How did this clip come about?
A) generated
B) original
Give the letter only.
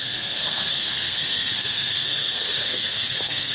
A